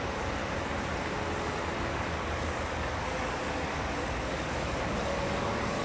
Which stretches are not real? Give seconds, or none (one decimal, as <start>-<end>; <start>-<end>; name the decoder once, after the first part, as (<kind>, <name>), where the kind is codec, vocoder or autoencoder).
0.0-0.4 (codec, DAC); 1.8-5.8